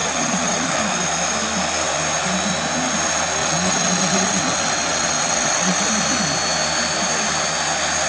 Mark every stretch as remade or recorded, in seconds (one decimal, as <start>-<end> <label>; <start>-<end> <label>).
0.0-0.8 remade; 0.8-3.4 recorded; 3.4-5.9 remade; 5.9-8.1 recorded